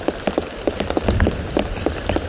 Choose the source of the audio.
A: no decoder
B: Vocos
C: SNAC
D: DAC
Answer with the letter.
A